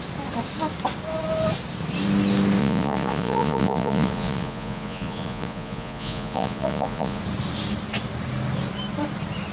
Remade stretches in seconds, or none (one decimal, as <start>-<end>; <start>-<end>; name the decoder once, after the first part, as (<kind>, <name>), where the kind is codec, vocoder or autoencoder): 2.6-7.2 (vocoder, Vocos)